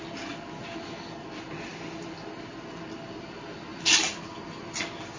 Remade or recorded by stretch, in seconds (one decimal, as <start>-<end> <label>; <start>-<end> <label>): 0.0-5.2 recorded